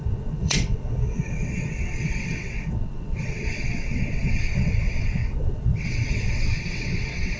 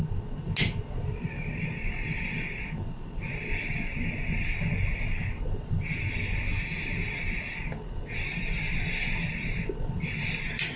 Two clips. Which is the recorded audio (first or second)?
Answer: second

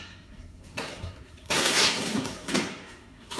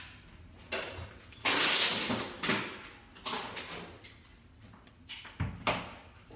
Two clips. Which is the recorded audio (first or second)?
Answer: second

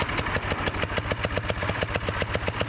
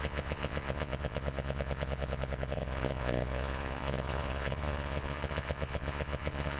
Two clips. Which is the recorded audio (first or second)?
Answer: first